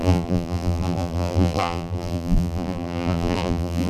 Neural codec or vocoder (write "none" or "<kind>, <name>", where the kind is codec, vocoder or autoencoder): vocoder, BigVGAN v2